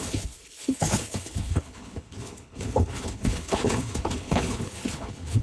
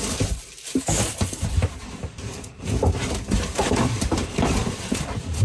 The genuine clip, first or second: second